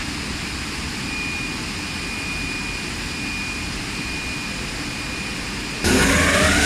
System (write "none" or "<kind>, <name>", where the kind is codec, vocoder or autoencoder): none